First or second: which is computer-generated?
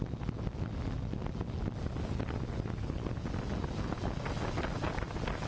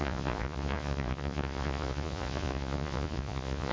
second